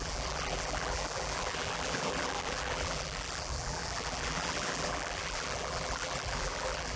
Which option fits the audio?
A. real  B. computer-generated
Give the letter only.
B